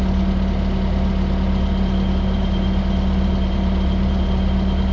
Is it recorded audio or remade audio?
recorded